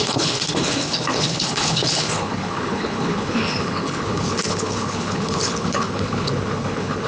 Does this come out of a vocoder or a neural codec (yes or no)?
yes